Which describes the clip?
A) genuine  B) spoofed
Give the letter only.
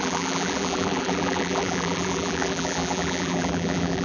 B